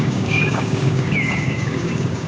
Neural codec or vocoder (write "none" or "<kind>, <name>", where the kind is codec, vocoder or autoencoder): codec, DAC